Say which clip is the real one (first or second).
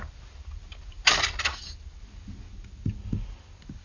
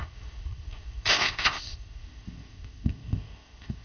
first